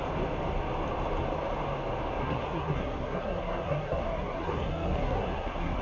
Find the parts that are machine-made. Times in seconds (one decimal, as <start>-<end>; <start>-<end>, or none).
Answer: 2.2-5.8